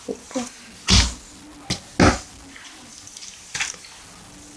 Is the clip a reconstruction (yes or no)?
no